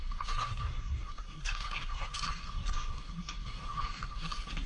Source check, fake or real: fake